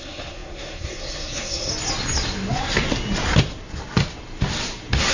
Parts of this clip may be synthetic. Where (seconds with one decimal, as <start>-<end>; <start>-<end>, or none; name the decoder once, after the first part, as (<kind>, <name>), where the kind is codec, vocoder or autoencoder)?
0.0-1.7 (codec, SNAC)